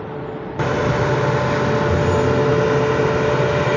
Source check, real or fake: real